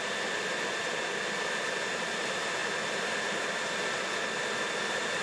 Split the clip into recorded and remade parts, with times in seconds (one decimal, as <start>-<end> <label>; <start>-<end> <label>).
0.0-5.2 recorded